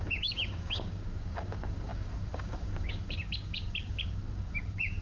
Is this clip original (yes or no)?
no